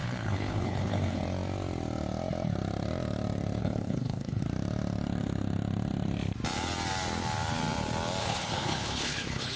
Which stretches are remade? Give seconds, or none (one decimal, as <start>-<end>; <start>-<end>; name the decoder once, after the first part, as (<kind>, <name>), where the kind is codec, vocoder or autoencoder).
0.0-1.2 (codec, HILCodec); 3.6-4.4; 8.2-9.6